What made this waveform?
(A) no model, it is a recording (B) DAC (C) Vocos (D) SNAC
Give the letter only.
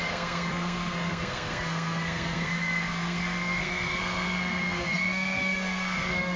D